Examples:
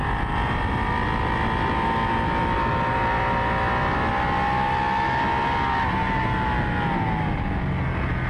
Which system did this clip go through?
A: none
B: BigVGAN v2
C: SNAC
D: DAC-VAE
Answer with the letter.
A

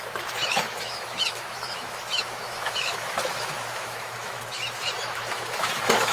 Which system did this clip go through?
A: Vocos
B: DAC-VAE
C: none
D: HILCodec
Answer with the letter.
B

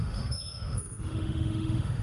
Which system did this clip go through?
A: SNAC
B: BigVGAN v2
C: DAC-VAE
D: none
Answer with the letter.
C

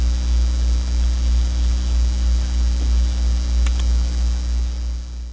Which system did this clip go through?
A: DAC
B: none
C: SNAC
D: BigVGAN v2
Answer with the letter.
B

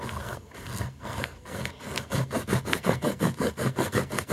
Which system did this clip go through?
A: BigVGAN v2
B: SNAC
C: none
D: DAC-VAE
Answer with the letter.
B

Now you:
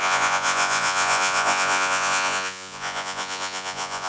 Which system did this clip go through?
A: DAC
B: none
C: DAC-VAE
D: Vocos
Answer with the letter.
D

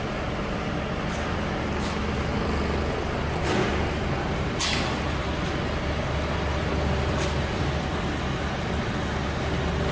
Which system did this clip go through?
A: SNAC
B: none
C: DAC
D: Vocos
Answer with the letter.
B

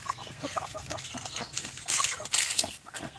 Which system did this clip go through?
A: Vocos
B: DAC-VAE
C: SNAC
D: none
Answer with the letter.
C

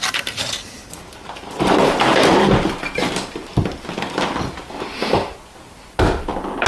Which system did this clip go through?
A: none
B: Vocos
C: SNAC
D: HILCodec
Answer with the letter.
A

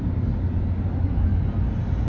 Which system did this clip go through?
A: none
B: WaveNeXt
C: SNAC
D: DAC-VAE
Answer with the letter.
A